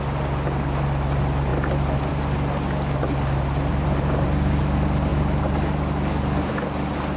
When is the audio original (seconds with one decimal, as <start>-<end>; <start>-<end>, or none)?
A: 0.0-3.7; 4.6-7.2